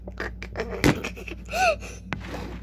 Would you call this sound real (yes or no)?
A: yes